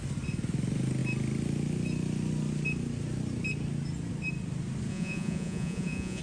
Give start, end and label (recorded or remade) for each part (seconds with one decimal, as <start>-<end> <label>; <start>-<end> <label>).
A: 0.0-4.9 recorded; 4.9-6.2 remade